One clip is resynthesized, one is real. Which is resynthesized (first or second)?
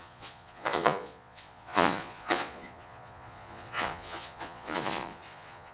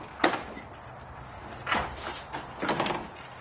first